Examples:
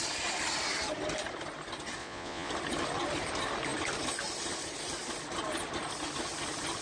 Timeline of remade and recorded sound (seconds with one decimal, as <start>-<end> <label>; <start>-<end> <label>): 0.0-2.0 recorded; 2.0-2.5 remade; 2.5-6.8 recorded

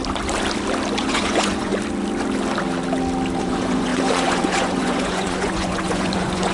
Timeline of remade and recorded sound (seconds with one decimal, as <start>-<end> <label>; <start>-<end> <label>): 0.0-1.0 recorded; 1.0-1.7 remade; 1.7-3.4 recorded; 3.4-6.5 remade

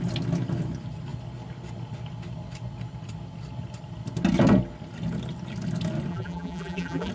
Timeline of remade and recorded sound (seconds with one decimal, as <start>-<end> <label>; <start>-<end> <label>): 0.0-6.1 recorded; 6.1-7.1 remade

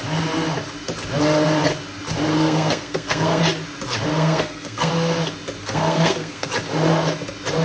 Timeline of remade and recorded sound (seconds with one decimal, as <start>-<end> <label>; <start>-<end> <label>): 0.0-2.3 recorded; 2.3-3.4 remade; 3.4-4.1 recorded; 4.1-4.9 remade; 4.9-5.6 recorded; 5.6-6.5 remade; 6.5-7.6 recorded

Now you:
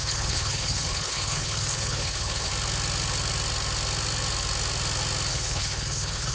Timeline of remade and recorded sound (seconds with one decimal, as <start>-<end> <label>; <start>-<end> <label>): 0.0-2.5 remade; 2.5-5.3 recorded; 5.3-6.3 remade

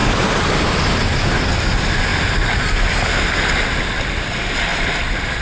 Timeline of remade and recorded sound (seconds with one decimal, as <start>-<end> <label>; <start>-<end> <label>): 0.0-5.4 recorded

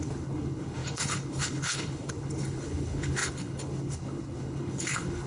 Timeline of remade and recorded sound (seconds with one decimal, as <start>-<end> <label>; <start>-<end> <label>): 0.0-5.3 remade